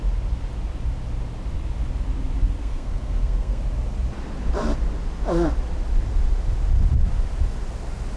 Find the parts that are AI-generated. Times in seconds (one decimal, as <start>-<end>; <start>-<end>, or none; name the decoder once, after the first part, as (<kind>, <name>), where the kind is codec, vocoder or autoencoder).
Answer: 2.6-3.6 (codec, SNAC)